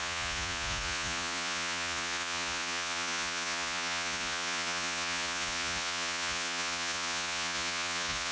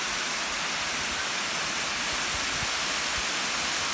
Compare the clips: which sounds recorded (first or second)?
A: second